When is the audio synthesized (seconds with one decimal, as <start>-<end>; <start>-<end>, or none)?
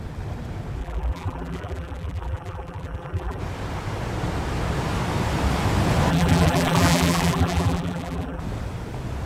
0.8-3.4; 6.1-8.4